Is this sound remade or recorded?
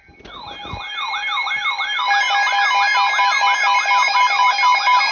recorded